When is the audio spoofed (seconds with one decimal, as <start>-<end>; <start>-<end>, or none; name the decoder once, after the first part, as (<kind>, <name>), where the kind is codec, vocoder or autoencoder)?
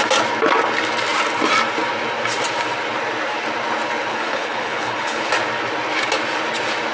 4.1-5.3 (codec, HILCodec)